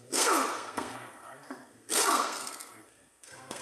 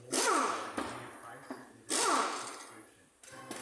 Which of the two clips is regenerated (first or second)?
first